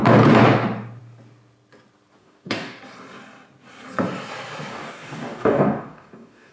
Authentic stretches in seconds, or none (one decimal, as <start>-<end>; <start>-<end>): 0.0-2.2; 2.8-4.7